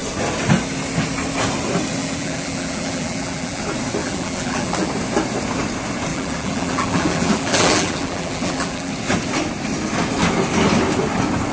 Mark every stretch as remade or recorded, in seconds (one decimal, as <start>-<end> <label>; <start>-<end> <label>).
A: 0.0-2.0 recorded; 2.0-3.6 remade; 3.6-4.0 recorded; 4.0-4.9 remade; 4.9-6.1 recorded; 6.1-8.9 remade; 8.9-11.5 recorded